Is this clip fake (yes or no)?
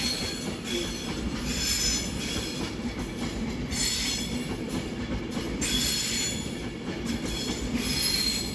no